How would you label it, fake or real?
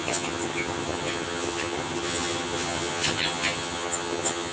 fake